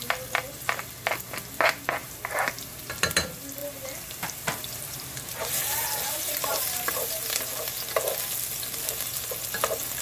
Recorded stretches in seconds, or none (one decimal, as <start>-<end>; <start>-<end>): 0.0-2.0; 2.9-3.6; 7.8-10.0